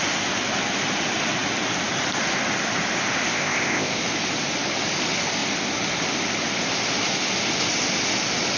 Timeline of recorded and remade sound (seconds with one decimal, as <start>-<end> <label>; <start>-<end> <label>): 0.0-3.3 recorded; 3.3-4.0 remade; 4.0-8.6 recorded